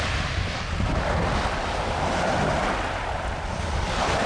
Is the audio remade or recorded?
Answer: recorded